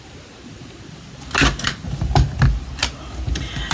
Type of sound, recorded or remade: recorded